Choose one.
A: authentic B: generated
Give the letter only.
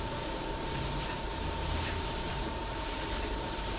B